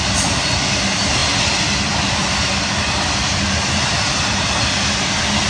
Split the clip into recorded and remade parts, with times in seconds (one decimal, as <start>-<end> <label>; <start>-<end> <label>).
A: 0.0-5.5 recorded